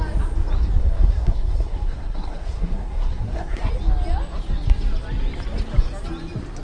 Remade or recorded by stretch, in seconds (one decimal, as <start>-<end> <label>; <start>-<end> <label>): 0.0-0.8 recorded; 0.8-3.7 remade; 3.7-6.6 recorded